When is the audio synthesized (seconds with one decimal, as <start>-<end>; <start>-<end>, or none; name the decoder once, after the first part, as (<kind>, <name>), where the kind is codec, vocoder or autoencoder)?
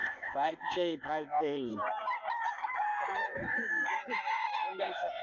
0.0-1.7 (codec, ZipCodec); 4.8-5.2